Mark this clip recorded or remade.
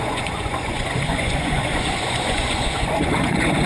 remade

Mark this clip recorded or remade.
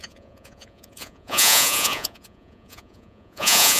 remade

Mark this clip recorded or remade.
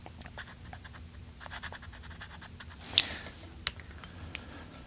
recorded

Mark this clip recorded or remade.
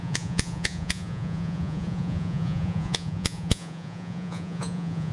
remade